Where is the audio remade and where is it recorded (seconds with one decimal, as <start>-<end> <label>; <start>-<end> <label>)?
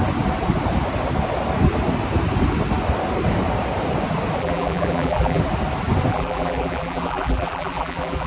0.0-4.4 recorded; 4.4-5.4 remade; 5.4-6.1 recorded; 6.1-8.3 remade